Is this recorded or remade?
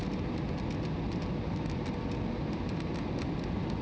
recorded